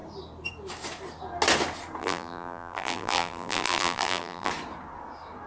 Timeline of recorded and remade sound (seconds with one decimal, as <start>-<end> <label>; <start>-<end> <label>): 0.0-2.0 recorded; 2.0-4.5 remade; 4.5-5.5 recorded